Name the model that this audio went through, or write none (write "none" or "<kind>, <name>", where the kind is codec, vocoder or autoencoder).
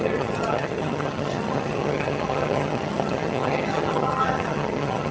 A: vocoder, HiFi-GAN